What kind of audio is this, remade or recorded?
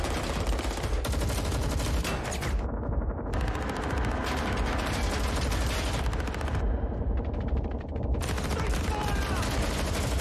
recorded